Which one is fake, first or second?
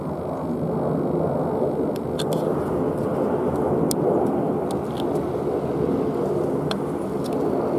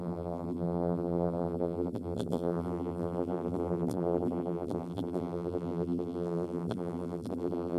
second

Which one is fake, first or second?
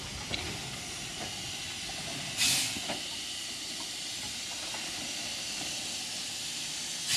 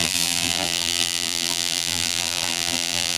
second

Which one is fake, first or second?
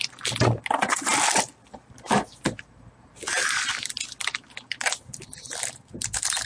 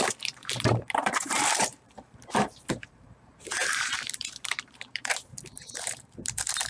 second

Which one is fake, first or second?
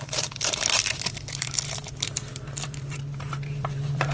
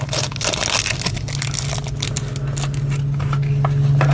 first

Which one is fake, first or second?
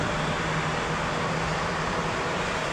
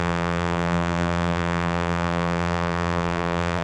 second